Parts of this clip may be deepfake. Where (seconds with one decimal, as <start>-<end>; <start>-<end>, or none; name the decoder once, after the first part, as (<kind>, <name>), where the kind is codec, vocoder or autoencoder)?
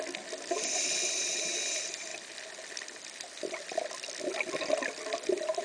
none